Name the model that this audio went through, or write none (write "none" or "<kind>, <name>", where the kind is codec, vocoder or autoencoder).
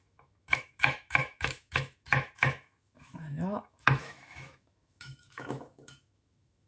autoencoder, DAC-VAE